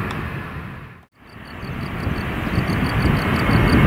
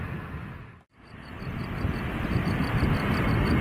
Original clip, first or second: first